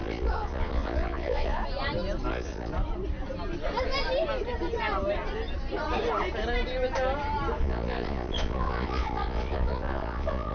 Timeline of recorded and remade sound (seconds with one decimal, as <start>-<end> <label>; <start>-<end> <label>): 0.0-1.6 remade; 1.6-2.3 recorded; 2.3-2.7 remade; 2.7-7.6 recorded; 7.6-10.5 remade